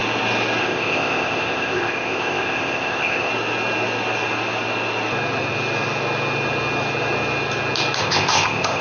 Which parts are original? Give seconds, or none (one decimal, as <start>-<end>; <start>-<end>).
0.0-0.6; 3.3-8.0

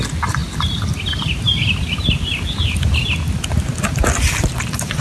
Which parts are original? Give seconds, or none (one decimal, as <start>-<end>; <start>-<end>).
0.0-5.0

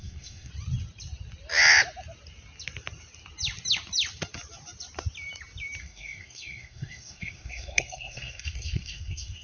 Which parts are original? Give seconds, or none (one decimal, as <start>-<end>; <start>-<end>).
0.5-5.8

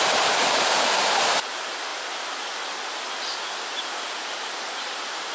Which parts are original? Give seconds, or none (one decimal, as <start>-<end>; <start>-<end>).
1.9-4.1

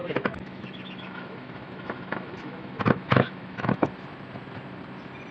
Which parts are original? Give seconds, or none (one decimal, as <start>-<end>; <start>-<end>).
3.9-5.3

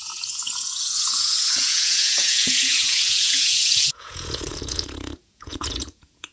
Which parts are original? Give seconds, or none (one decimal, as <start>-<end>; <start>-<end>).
none

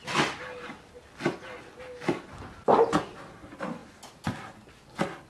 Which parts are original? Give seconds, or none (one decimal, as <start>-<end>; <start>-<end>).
0.0-5.3

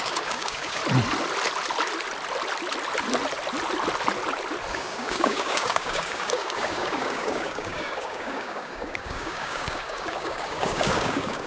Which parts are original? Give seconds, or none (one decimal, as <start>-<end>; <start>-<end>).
0.8-4.7